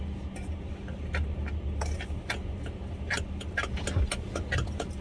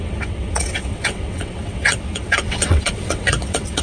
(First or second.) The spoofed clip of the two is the second